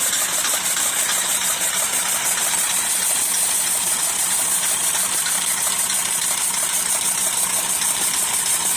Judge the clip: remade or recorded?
recorded